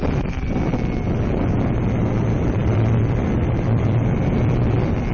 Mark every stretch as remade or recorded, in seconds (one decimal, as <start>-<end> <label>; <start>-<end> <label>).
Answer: 0.0-0.7 remade; 0.7-2.0 recorded; 2.0-5.1 remade